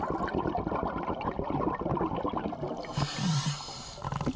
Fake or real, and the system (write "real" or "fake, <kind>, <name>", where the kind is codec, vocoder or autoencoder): real